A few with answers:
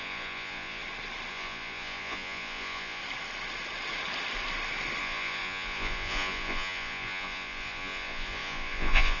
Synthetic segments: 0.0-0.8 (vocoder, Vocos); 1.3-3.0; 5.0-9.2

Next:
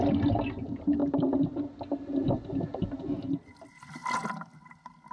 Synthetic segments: none

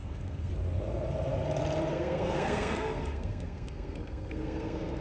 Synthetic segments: 0.0-0.5 (codec, SNAC); 1.9-5.0